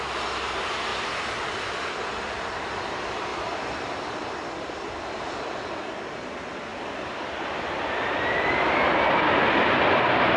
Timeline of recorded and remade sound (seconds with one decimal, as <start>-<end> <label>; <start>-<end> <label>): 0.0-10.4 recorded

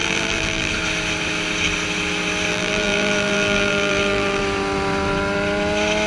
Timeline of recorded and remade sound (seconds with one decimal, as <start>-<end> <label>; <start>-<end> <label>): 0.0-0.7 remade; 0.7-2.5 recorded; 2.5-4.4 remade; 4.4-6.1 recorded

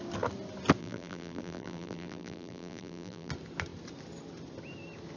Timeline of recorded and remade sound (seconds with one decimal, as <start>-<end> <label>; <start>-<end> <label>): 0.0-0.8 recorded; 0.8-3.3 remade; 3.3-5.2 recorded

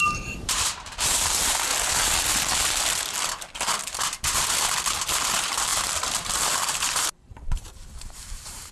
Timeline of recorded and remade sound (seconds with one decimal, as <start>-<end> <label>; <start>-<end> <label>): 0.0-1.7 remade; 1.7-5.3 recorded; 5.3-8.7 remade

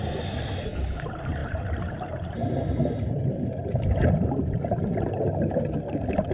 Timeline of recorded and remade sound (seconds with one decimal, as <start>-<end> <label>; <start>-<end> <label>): 0.0-1.4 recorded; 1.4-4.9 remade; 4.9-6.3 recorded

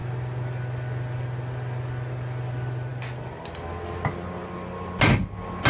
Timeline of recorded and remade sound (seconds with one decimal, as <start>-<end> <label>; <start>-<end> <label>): 0.0-5.7 recorded

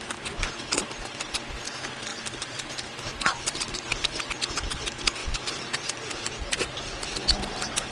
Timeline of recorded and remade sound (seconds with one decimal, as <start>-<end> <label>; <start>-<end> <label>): 0.0-2.1 recorded; 2.1-4.3 remade; 4.3-5.2 recorded; 5.2-7.2 remade; 7.2-7.9 recorded

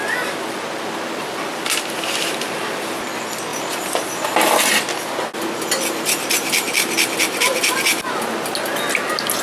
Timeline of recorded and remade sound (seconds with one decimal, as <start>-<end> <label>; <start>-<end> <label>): 0.0-3.5 recorded; 3.5-4.7 remade; 4.7-9.4 recorded